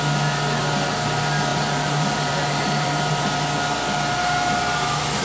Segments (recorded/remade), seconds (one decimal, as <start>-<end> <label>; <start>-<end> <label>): 0.0-1.5 recorded; 1.5-3.1 remade; 3.1-5.2 recorded